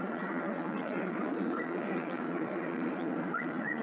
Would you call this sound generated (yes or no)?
yes